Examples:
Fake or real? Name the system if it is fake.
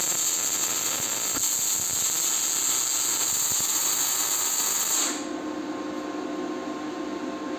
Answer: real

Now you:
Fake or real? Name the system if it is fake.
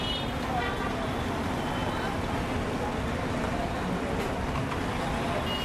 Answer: fake, vocoder, BigVGAN v2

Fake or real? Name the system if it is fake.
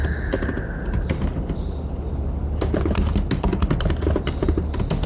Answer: real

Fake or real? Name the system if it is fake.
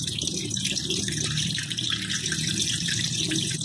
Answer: fake, vocoder, BigVGAN v2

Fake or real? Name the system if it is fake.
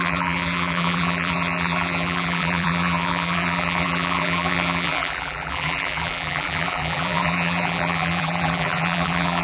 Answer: fake, vocoder, BigVGAN v2